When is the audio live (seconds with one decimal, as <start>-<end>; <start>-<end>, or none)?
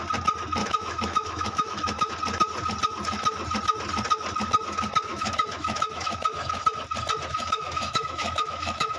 0.0-0.6; 2.1-5.1; 6.6-7.3